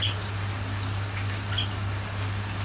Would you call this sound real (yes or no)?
yes